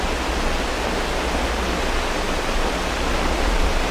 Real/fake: real